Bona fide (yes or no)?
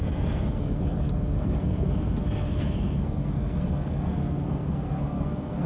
no